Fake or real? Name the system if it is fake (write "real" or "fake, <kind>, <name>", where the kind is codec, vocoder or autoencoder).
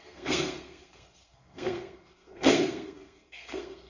fake, codec, SNAC